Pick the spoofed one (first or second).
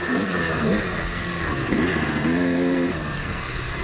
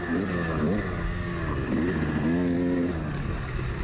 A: first